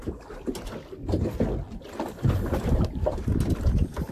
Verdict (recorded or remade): recorded